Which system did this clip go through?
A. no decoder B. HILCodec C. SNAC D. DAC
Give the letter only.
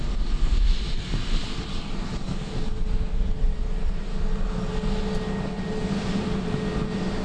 A